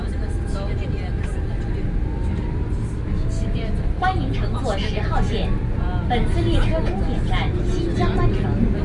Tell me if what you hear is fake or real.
real